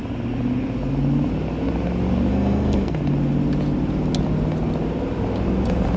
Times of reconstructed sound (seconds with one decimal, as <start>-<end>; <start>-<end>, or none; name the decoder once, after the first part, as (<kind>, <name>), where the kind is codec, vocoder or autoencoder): 2.3-3.0 (codec, SNAC)